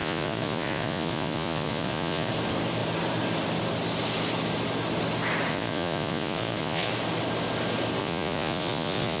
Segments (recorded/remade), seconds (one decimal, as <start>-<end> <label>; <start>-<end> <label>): 0.0-2.3 remade; 2.3-5.5 recorded; 5.5-6.9 remade; 6.9-8.0 recorded; 8.0-9.2 remade